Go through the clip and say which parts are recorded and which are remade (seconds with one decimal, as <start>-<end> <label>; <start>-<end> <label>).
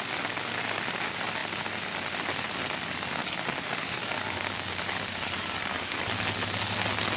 0.0-3.2 recorded; 3.2-6.0 remade; 6.0-7.2 recorded